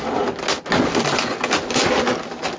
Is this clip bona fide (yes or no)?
yes